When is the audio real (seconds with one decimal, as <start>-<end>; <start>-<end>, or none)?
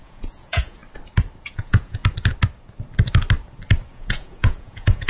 0.8-1.5; 2.0-3.9